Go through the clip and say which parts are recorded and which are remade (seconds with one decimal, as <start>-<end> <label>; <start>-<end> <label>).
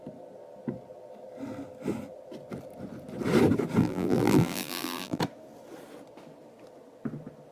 0.0-3.8 recorded; 3.8-5.2 remade; 5.2-7.5 recorded